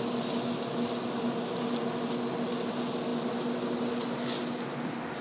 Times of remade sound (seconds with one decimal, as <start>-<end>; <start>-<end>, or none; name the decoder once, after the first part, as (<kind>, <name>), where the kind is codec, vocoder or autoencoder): none